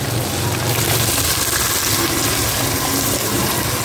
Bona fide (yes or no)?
yes